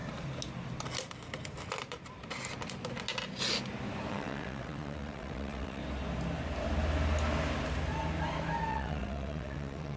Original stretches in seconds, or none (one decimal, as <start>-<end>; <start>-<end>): 0.0-4.1; 5.8-8.7